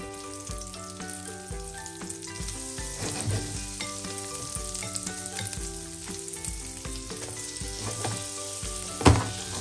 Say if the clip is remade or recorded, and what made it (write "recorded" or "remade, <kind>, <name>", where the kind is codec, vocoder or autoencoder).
recorded